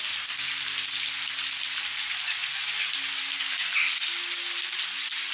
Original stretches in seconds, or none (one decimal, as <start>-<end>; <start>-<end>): 0.0-5.3